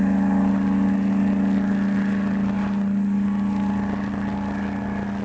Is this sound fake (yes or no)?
no